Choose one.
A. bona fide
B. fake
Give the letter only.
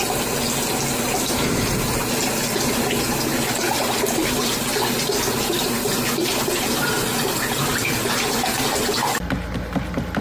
A